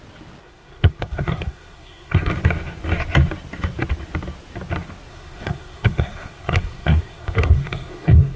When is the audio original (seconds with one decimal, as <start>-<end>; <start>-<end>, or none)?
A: 0.0-0.4; 2.3-5.1